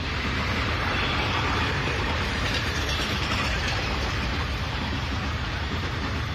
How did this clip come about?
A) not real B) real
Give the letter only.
A